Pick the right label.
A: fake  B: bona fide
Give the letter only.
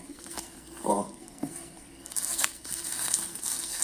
A